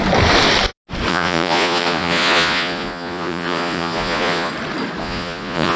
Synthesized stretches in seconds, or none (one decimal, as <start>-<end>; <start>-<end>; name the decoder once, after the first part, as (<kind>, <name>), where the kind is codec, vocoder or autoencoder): 1.1-4.5 (vocoder, Vocos); 5.0-5.8